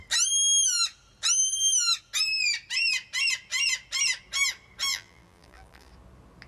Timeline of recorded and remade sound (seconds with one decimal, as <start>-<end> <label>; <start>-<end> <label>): 0.0-4.9 recorded; 4.9-5.9 remade; 5.9-6.5 recorded